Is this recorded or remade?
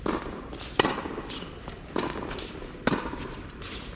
remade